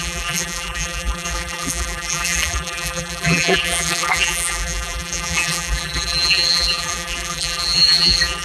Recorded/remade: remade